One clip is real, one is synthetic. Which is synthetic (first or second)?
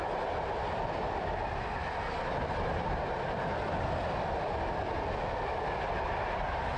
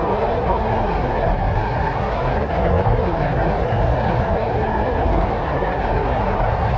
second